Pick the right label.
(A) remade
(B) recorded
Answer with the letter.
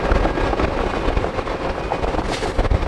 B